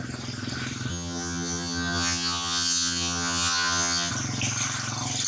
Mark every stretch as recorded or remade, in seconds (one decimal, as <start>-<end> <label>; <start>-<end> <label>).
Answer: 0.0-0.9 recorded; 0.9-4.1 remade; 4.1-5.3 recorded